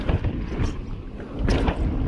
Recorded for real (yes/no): yes